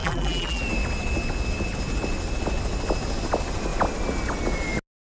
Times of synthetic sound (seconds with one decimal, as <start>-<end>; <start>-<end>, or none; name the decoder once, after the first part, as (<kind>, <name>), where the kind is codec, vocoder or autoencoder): 0.0-0.6 (vocoder, BigVGAN v2)